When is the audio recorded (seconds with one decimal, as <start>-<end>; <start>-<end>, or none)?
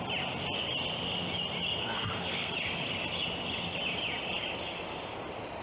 0.0-1.8; 2.5-5.6